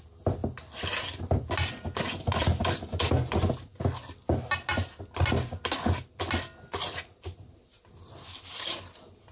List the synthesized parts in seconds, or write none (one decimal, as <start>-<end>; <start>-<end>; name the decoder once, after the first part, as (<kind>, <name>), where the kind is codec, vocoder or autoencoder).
none